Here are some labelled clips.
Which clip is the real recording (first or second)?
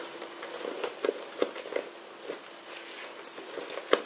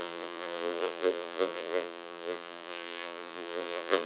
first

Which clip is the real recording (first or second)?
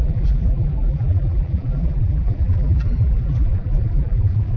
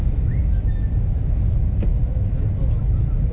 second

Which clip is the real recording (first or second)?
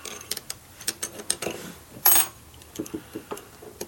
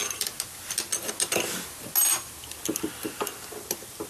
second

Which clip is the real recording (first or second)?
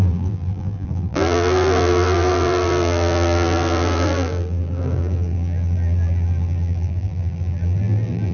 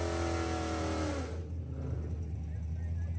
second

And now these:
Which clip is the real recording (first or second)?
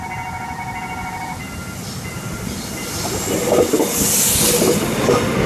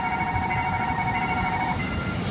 first